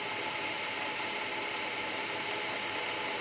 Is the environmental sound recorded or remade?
recorded